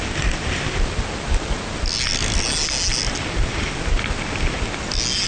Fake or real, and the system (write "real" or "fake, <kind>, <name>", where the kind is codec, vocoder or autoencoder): real